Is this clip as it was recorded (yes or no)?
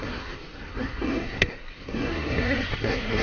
no